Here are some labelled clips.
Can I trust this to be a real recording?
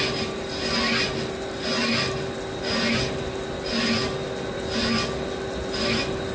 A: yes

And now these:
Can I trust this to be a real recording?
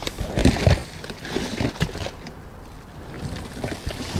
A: yes